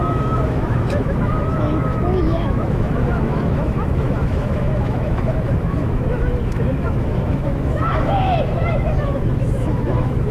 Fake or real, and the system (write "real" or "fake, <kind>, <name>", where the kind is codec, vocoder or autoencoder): fake, autoencoder, DAC-VAE